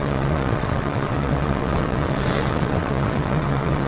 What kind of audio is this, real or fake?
fake